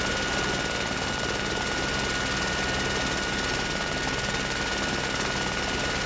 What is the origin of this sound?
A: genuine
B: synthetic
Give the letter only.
A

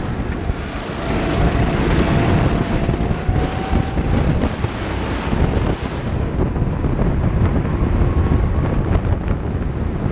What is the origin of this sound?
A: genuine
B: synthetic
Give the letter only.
A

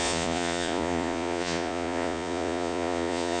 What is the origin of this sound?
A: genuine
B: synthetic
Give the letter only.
B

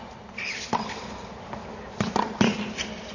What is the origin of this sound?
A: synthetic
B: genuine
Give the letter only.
B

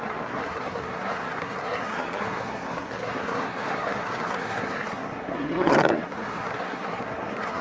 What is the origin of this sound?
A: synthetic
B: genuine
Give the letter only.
A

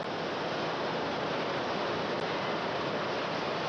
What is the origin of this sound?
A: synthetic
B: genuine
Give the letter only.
B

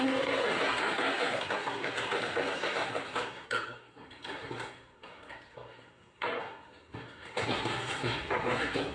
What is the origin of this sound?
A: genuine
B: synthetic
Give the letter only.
B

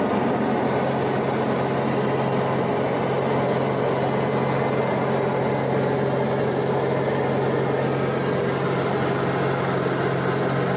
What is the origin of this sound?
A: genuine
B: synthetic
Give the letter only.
A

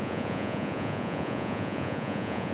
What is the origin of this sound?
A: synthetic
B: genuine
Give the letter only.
A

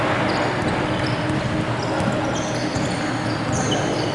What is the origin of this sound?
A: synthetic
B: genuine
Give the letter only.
B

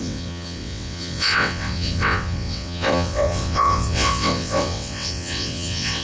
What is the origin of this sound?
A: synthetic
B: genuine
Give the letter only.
A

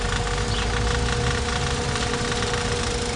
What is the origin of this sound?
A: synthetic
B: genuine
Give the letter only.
B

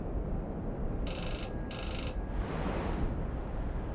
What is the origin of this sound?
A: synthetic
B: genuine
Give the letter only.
B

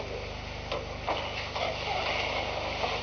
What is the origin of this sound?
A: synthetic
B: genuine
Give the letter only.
B